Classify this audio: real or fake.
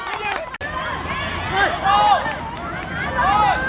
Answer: real